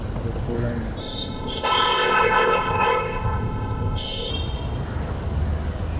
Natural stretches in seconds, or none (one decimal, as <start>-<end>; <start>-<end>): 0.0-1.0; 4.3-6.0